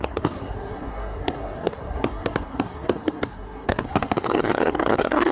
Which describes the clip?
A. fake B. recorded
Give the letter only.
A